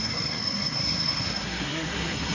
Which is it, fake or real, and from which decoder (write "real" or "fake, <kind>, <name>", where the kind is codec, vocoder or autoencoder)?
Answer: fake, codec, SNAC